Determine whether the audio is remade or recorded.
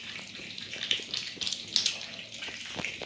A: recorded